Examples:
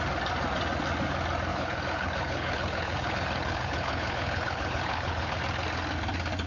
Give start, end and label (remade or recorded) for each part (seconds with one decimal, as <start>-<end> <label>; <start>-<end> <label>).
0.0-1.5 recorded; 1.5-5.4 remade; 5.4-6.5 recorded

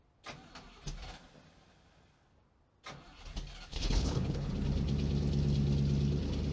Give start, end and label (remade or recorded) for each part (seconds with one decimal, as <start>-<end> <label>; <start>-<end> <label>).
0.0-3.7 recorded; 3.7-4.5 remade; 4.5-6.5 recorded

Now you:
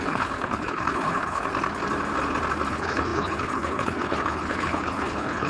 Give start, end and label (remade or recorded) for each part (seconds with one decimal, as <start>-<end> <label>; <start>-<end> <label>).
0.0-1.5 remade; 1.5-2.7 recorded; 2.7-5.5 remade